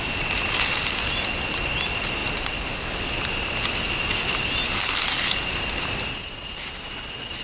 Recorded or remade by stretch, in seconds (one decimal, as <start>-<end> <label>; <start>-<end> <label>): 0.0-7.4 recorded